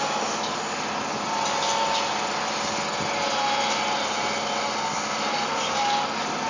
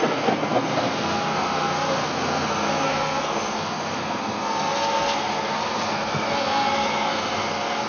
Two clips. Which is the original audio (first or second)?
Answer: first